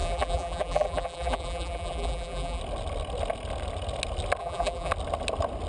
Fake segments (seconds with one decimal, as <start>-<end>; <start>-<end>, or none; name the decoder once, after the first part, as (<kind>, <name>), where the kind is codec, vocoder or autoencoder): 0.0-2.6 (vocoder, BigVGAN v2); 4.4-4.9